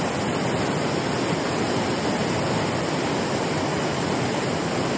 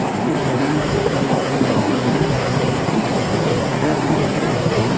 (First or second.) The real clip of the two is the first